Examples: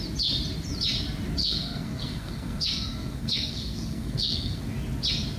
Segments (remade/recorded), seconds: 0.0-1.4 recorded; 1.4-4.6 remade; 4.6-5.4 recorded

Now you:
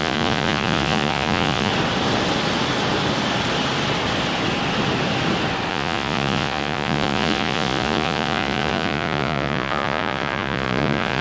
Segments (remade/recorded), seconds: 0.0-1.7 remade; 1.7-5.7 recorded; 5.7-11.2 remade

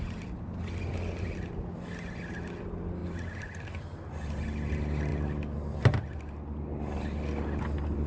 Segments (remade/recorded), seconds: 0.0-8.1 recorded

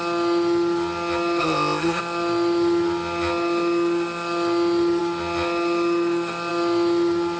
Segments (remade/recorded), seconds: 0.0-1.4 recorded; 1.4-2.0 remade; 2.0-7.4 recorded